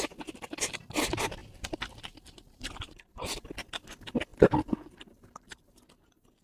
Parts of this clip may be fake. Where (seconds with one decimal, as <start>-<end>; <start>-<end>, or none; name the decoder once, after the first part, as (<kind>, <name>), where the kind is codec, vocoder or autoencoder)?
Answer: 1.4-3.2 (vocoder, BigVGAN v2); 4.3-5.8